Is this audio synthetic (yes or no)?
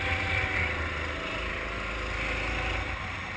no